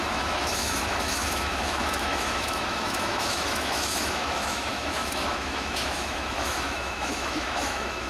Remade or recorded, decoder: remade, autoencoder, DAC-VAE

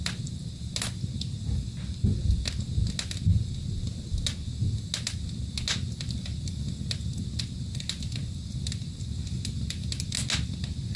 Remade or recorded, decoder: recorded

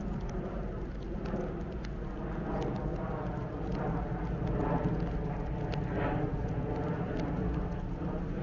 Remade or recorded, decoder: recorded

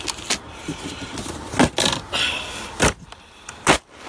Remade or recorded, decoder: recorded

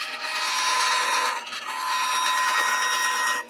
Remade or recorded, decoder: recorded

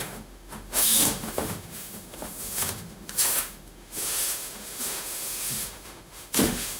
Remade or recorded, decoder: remade, autoencoder, DAC-VAE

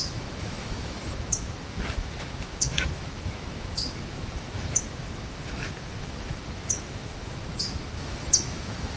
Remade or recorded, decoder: remade, autoencoder, DAC-VAE